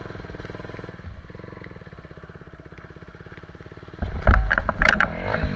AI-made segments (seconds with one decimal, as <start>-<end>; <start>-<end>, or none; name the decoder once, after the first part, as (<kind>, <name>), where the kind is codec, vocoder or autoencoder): none